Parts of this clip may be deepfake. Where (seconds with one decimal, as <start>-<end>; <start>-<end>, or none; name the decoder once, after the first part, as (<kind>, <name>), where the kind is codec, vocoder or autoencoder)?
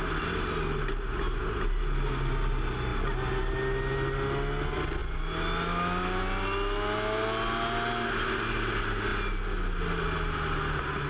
none